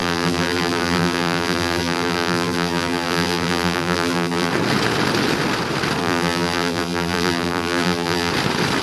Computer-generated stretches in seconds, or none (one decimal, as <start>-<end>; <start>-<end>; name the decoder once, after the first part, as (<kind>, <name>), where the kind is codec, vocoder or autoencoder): 0.0-4.5 (vocoder, BigVGAN v2); 6.0-8.3